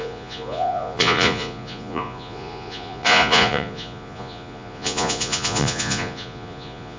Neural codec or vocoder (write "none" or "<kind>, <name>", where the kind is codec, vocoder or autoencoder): vocoder, Vocos